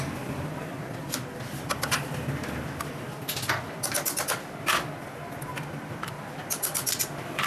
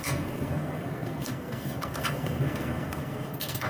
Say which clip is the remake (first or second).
second